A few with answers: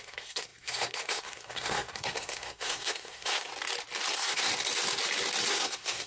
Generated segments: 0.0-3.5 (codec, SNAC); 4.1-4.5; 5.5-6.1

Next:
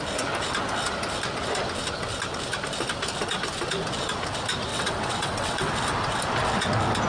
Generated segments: 4.7-5.7 (vocoder, WaveNeXt)

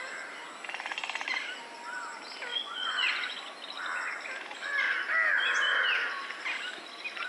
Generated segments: 2.5-3.5 (vocoder, Vocos)

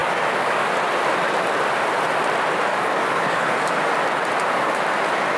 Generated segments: 0.0-0.7 (codec, DAC); 2.7-3.9

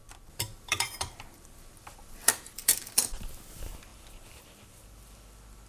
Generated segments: 0.0-3.4 (vocoder, BigVGAN v2); 3.9-4.4